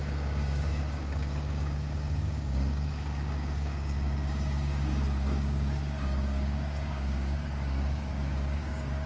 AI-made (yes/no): yes